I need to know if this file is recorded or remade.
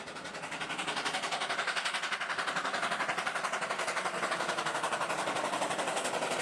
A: recorded